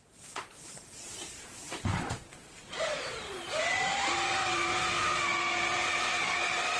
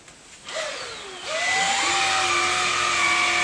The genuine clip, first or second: second